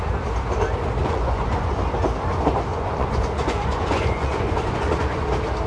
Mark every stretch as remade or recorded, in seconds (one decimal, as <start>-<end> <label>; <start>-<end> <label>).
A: 0.0-1.0 recorded; 1.0-1.7 remade; 1.7-2.7 recorded; 2.7-5.3 remade; 5.3-5.7 recorded